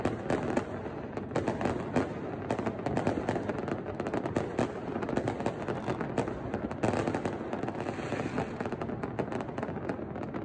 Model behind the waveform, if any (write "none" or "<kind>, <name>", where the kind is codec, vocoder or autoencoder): none